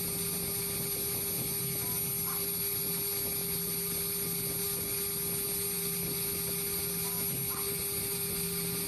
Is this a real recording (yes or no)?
yes